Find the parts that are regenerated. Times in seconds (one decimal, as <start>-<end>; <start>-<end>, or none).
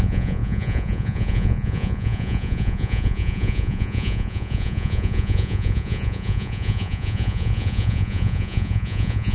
0.0-9.3